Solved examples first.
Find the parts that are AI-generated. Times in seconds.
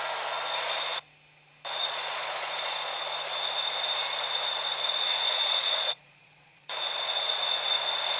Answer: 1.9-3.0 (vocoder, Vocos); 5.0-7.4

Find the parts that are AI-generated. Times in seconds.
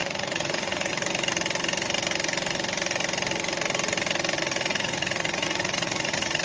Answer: 0.0-0.9 (vocoder, Vocos); 4.7-6.4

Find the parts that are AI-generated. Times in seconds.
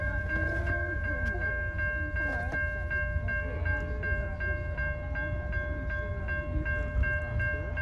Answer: 0.0-1.5 (vocoder, Vocos)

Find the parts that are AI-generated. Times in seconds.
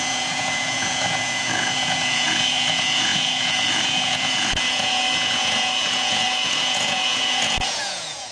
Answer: 0.0-8.3 (vocoder, Vocos)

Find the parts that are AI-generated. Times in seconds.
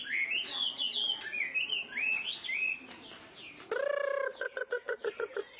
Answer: 4.3-5.6 (vocoder, Vocos)